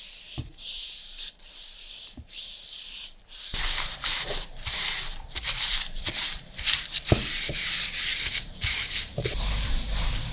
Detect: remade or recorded remade